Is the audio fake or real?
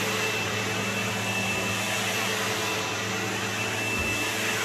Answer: real